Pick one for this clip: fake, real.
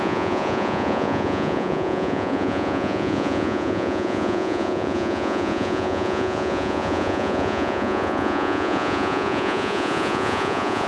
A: fake